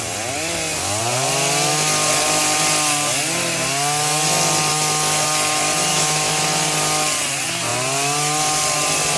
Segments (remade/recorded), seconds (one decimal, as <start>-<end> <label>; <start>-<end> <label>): 0.0-5.9 recorded; 5.9-6.4 remade; 6.4-9.2 recorded